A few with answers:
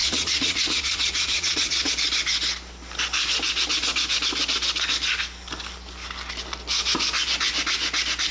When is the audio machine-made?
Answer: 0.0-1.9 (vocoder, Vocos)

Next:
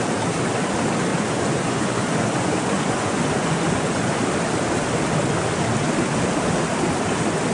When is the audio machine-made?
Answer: 1.1-4.2 (vocoder, Vocos)

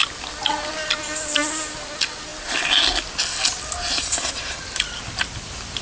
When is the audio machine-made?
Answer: none